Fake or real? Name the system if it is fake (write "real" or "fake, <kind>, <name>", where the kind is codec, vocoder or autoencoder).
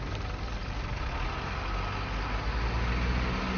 real